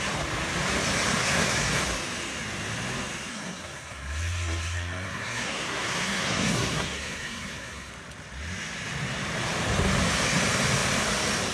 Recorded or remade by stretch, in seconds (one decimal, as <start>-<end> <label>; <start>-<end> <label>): 0.0-1.2 recorded; 1.2-1.8 remade; 1.8-3.3 recorded; 3.3-7.9 remade; 7.9-11.5 recorded